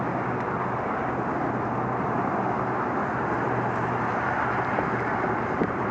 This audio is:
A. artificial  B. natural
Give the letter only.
B